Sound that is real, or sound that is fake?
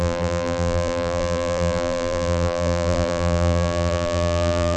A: fake